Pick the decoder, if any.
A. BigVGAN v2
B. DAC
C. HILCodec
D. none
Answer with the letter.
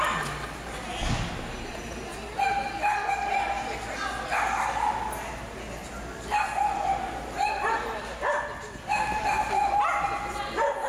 D